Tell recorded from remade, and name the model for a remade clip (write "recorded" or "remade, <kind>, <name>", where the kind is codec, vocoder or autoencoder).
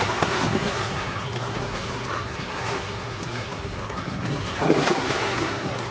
remade, codec, SNAC